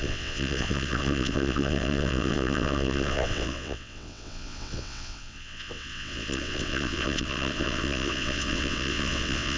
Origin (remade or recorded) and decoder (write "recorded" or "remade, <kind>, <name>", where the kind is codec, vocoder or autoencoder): remade, vocoder, WaveNeXt